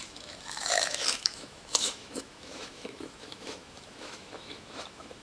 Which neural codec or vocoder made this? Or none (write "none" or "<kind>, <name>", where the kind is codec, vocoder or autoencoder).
autoencoder, DAC-VAE